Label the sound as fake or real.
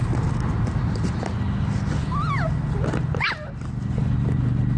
real